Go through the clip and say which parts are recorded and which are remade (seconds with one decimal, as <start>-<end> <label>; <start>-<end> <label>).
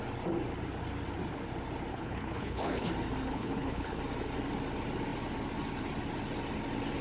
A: 0.0-1.9 recorded; 1.9-2.9 remade; 2.9-3.3 recorded; 3.3-4.0 remade; 4.0-7.0 recorded